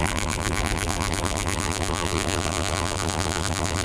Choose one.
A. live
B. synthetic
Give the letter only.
B